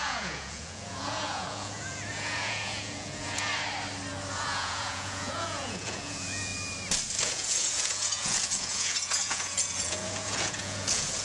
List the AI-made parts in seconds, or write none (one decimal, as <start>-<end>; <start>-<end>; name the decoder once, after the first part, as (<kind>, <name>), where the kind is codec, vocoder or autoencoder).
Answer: 0.0-3.5 (vocoder, Vocos); 4.3-6.5; 7.2-11.2

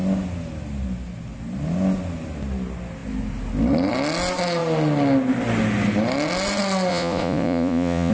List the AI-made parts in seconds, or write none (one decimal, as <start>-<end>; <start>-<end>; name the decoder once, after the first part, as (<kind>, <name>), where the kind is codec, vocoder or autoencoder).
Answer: 6.9-8.1 (vocoder, Vocos)

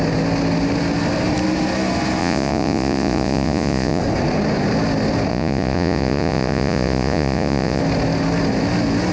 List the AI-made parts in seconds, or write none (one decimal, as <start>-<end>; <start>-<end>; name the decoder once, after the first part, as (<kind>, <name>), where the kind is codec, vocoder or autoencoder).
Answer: 2.2-4.0 (vocoder, Vocos); 5.3-7.8

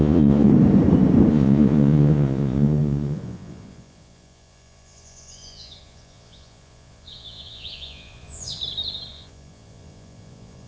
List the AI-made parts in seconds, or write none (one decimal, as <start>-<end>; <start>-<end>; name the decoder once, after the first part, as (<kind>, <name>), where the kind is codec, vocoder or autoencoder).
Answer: 0.0-0.5 (vocoder, Vocos); 1.3-8.6; 9.1-10.7